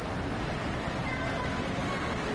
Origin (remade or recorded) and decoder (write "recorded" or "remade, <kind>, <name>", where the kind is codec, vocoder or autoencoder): recorded